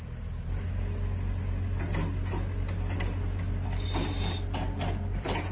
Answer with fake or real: real